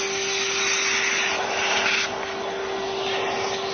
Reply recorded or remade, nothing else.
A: recorded